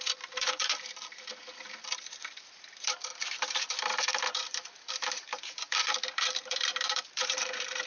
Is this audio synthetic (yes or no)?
yes